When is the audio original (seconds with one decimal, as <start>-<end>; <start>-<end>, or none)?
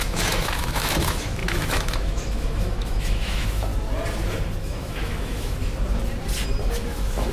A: 3.7-4.6; 5.6-6.7